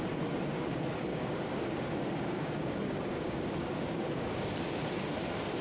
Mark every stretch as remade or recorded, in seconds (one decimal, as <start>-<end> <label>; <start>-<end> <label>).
0.0-1.1 recorded; 1.1-4.5 remade; 4.5-5.6 recorded